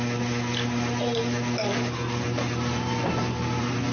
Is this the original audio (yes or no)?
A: yes